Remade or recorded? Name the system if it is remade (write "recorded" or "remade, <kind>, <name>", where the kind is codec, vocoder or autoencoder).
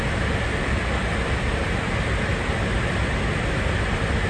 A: recorded